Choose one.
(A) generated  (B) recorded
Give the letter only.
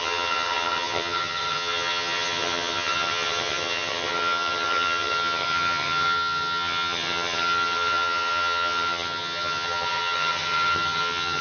A